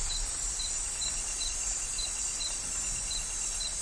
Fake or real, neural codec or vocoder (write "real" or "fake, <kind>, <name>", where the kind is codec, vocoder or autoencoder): real